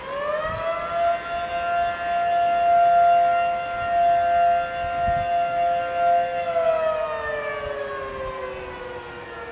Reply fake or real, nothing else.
real